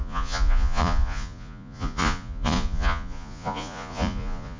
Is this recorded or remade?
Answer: remade